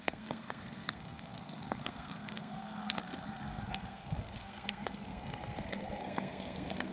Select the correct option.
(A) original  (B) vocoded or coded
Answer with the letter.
B